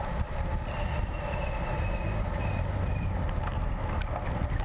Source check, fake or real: real